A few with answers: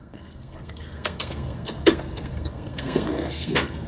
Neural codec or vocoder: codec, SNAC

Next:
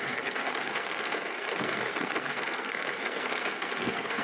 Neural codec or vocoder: codec, SNAC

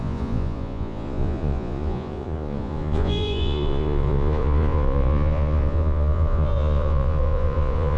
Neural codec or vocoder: vocoder, Vocos